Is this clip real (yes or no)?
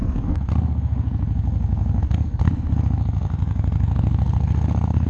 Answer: no